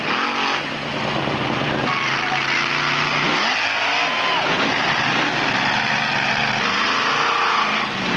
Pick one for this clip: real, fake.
real